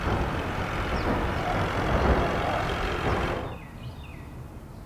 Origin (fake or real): real